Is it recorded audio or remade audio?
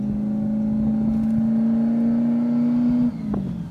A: recorded